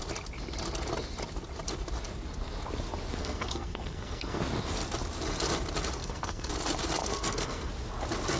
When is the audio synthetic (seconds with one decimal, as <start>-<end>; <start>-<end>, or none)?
3.2-4.4; 6.0-6.5; 7.0-7.7